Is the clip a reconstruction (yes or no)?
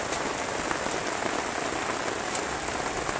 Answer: no